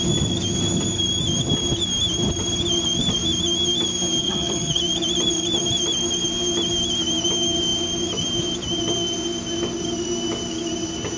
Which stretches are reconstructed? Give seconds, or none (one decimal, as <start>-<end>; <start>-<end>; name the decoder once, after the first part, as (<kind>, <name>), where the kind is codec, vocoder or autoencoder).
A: 4.2-4.8 (vocoder, HiFi-GAN)